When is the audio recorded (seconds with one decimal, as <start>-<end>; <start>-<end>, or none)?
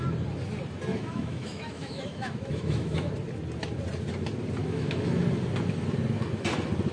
0.0-0.9; 3.1-4.6; 5.2-6.9